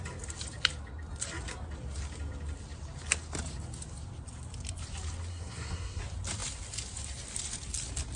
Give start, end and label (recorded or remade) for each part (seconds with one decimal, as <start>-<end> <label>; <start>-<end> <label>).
0.0-5.3 recorded; 5.3-6.0 remade; 6.0-8.2 recorded